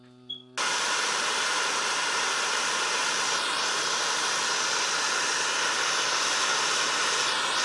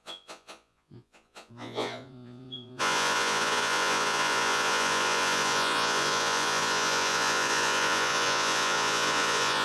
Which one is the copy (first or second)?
second